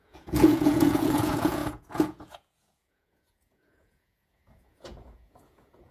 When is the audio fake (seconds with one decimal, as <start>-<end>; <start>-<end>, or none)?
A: 0.0-5.9